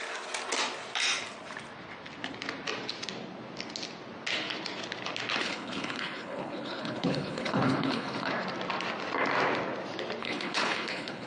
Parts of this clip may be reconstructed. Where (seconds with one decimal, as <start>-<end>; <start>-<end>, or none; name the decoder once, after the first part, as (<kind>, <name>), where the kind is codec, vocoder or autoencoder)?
5.4-8.3 (codec, HILCodec); 10.2-11.3